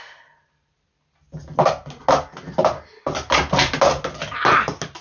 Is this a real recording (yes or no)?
yes